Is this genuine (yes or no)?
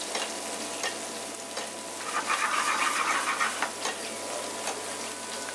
yes